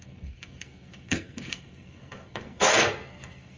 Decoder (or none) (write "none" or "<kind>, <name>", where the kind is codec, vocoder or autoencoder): codec, SNAC